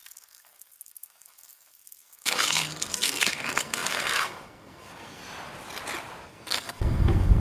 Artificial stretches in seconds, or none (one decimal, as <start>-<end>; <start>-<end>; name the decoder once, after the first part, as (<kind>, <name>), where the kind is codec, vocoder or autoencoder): 0.0-5.2 (codec, SNAC); 6.3-7.4